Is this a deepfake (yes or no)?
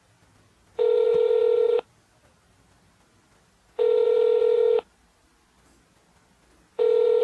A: no